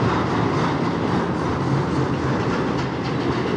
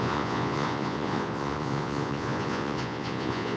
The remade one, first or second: second